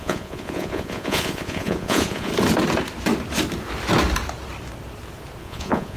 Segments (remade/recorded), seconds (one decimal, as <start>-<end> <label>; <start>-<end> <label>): 0.0-2.3 remade; 2.3-5.4 recorded; 5.4-6.0 remade